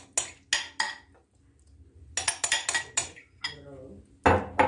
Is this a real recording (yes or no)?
yes